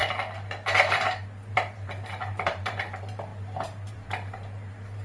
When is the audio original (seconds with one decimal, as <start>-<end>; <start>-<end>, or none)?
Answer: 0.0-1.5; 3.3-3.9